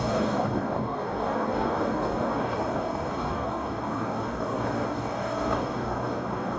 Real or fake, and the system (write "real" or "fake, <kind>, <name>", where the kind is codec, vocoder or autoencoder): fake, codec, DAC